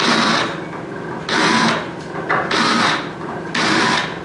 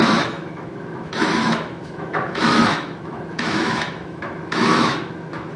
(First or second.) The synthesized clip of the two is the second